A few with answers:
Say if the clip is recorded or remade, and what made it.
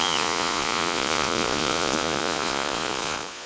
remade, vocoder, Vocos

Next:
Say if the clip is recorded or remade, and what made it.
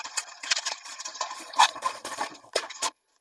remade, vocoder, Vocos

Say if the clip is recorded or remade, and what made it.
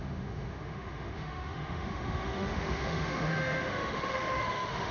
remade, autoencoder, DAC-VAE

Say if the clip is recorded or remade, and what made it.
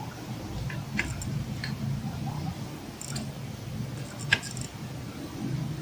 recorded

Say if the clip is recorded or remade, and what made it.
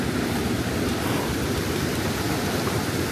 recorded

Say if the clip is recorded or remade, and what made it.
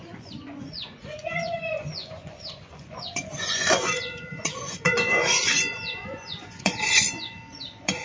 remade, vocoder, Vocos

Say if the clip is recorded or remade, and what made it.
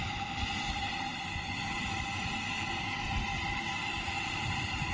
recorded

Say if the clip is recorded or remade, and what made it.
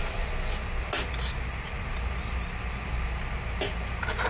recorded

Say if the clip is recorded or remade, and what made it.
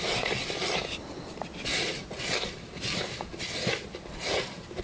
recorded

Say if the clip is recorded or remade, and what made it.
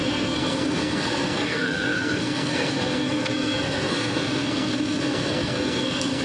remade, codec, SNAC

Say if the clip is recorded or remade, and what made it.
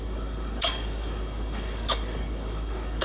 remade, codec, DAC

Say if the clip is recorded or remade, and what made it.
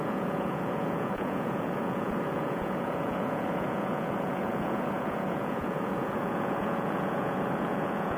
remade, vocoder, Vocos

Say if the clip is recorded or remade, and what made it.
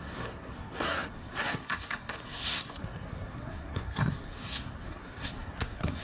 remade, codec, SNAC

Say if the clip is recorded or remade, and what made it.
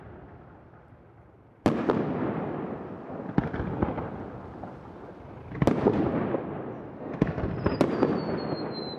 recorded